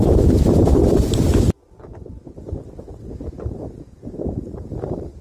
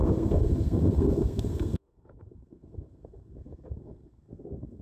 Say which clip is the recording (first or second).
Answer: first